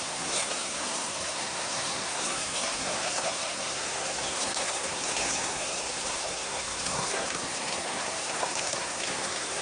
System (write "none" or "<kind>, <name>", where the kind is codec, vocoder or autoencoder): codec, SNAC